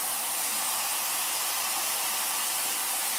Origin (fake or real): real